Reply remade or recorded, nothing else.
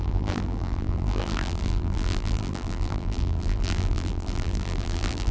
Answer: remade